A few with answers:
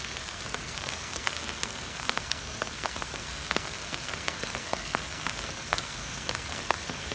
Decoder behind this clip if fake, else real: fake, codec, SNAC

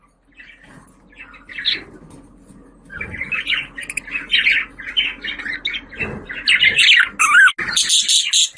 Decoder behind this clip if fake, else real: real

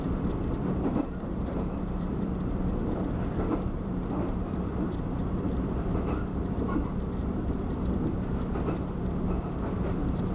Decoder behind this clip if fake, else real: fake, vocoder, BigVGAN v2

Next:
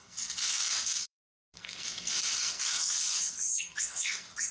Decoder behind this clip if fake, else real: fake, codec, SNAC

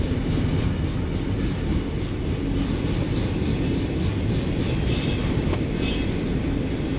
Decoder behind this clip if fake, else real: real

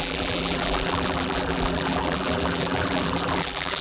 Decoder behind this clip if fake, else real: fake, vocoder, BigVGAN v2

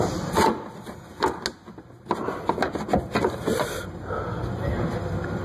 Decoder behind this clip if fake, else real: real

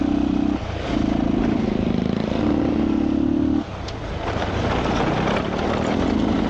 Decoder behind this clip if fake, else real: real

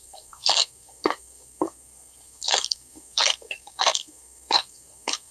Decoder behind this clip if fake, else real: fake, codec, SNAC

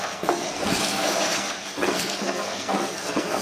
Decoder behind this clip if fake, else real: fake, codec, SNAC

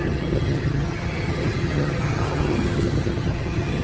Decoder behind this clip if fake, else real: fake, vocoder, HiFi-GAN